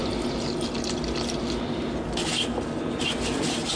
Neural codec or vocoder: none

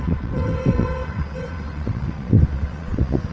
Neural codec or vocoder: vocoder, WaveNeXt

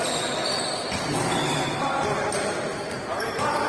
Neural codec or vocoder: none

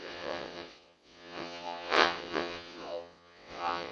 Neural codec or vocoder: vocoder, WaveNeXt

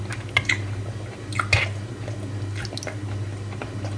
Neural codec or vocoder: none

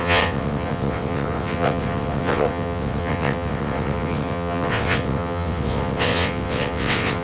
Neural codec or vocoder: vocoder, WaveNeXt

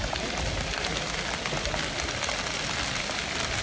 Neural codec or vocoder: none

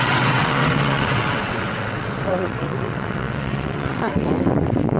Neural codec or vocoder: vocoder, WaveNeXt